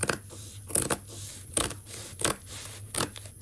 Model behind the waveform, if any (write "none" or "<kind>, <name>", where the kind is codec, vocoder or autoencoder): none